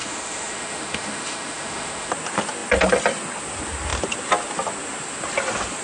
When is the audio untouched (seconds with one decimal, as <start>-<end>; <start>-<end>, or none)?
2.1-5.8